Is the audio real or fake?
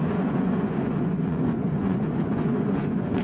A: fake